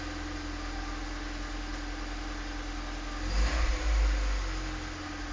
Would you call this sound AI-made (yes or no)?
no